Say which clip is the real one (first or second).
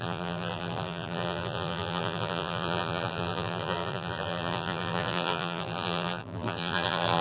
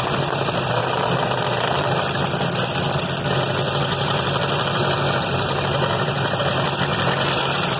second